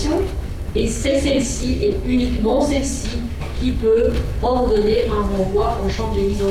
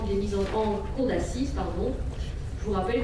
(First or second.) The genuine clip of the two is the second